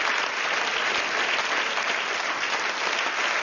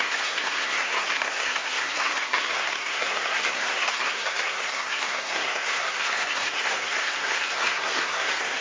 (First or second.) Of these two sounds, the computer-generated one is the second